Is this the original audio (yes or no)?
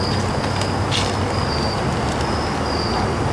yes